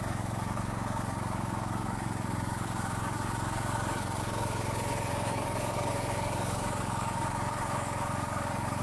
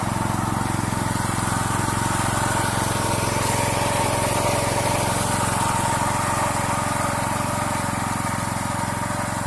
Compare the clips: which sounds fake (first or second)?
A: first